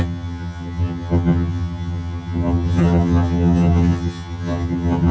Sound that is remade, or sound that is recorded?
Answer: remade